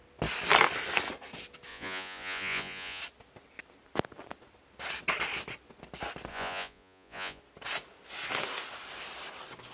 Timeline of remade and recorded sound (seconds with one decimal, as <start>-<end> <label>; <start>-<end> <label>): 0.0-1.7 recorded; 1.7-3.0 remade; 3.0-6.3 recorded; 6.3-7.4 remade; 7.4-9.7 recorded